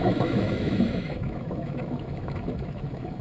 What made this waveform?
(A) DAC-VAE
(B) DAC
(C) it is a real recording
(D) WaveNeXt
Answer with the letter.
A